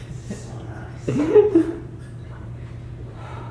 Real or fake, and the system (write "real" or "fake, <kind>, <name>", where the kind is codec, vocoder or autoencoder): fake, vocoder, BigVGAN v2